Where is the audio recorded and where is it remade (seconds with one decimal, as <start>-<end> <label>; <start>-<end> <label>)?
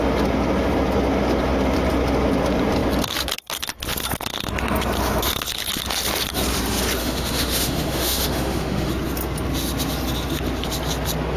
0.0-7.0 recorded; 7.0-8.9 remade; 8.9-11.4 recorded